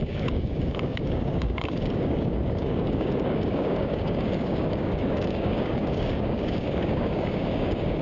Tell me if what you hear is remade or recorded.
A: remade